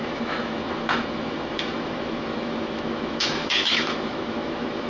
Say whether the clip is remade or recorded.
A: remade